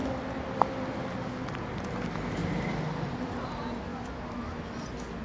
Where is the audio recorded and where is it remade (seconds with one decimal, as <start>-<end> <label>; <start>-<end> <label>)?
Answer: 0.0-3.9 recorded; 3.9-4.7 remade; 4.7-5.2 recorded